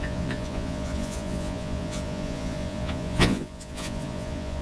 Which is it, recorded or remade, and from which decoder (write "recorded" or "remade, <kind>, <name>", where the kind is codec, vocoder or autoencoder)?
remade, vocoder, Vocos